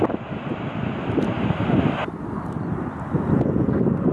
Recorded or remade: recorded